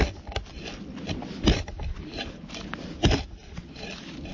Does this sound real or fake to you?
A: real